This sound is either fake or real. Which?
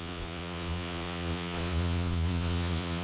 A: fake